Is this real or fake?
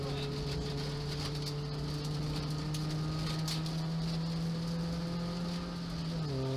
real